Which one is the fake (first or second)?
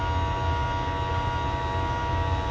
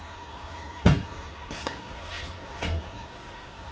second